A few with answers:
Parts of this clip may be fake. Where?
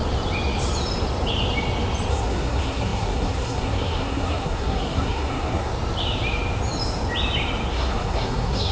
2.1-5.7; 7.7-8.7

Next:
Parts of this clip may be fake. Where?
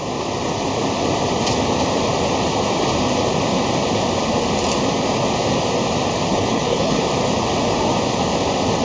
6.3-7.0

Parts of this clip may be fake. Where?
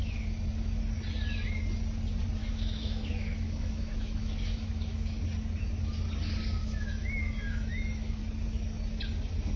2.4-5.2; 6.6-8.2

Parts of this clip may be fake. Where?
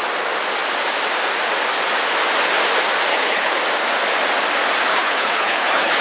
3.1-3.6; 4.9-6.0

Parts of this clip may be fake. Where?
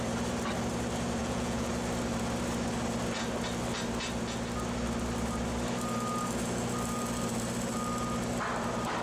1.2-1.7